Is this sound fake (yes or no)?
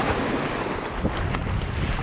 no